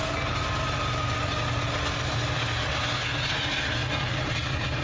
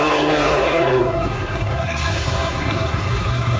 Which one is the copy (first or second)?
second